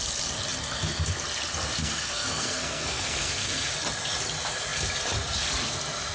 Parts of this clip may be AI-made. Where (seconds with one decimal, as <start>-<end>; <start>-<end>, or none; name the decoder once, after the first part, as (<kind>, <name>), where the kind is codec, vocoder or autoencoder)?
1.8-3.7 (codec, SNAC)